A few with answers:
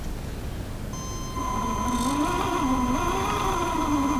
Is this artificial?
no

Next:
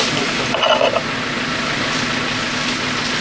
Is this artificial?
no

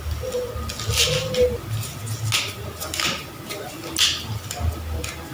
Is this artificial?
no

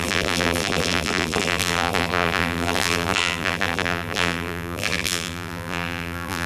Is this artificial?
yes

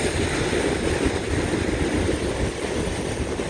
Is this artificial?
no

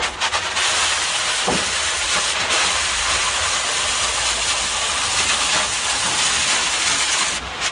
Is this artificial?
no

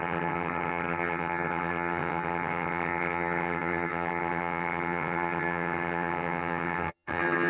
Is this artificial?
yes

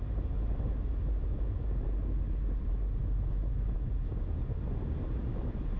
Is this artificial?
no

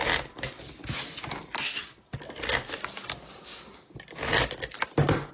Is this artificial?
no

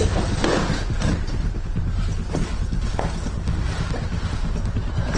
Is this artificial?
no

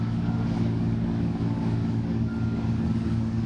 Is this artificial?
yes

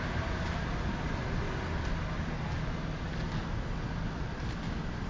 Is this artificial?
no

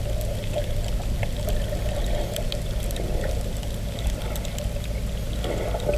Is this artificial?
no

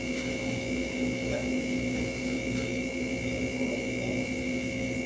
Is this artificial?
yes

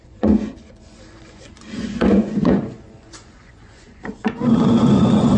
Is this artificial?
yes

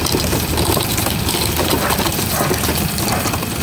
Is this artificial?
no